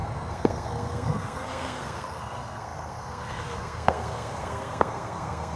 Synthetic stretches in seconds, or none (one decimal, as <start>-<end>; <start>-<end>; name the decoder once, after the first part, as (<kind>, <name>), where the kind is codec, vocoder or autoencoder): 0.0-5.6 (codec, SNAC)